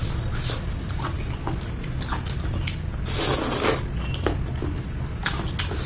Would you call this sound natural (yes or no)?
yes